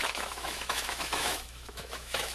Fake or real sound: fake